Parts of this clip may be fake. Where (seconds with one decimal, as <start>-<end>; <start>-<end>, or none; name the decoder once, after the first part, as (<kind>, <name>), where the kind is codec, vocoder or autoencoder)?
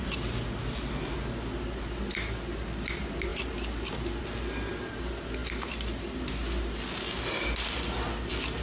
none